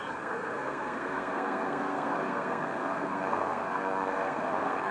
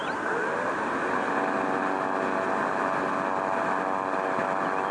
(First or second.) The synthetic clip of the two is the first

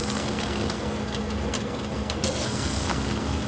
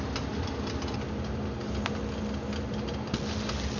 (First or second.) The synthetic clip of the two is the first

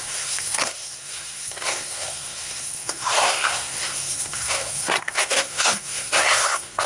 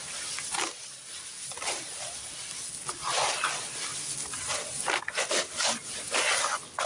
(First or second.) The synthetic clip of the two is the first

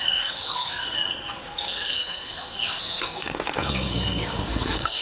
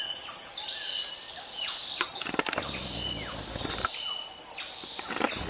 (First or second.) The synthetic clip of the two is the first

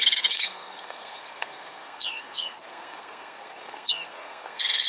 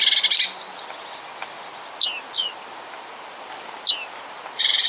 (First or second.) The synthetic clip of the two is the first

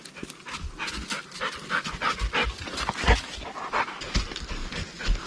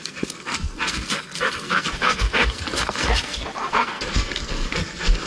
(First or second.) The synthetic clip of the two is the second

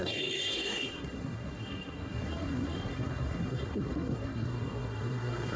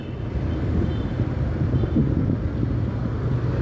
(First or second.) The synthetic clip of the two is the first